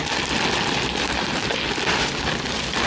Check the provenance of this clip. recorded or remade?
recorded